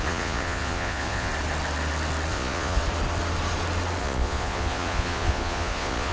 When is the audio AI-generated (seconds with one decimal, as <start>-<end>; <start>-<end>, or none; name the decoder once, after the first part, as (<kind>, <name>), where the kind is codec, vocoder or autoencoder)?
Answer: 0.0-1.3 (vocoder, Vocos); 2.3-2.8; 4.0-6.1